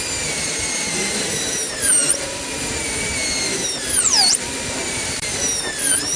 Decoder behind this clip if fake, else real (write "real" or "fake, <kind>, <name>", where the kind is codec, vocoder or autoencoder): fake, vocoder, BigVGAN v2